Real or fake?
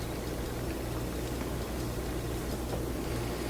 real